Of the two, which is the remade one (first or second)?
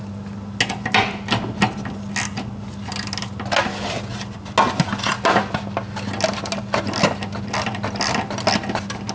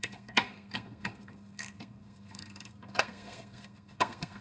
second